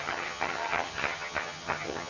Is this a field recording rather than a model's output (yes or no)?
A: no